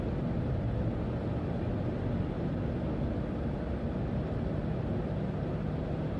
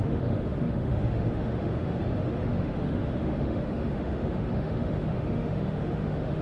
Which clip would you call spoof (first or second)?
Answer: second